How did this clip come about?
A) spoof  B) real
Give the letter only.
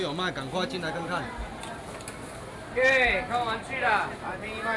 B